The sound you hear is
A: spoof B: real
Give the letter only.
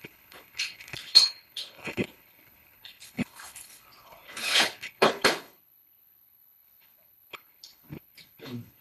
A